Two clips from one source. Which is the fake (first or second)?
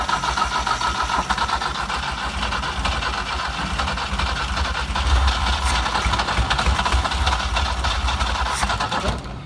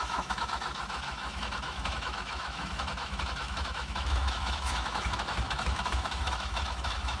second